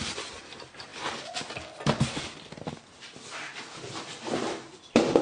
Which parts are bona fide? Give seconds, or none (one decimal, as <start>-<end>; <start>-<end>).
none